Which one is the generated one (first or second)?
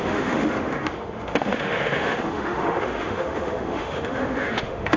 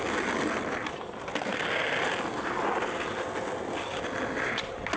first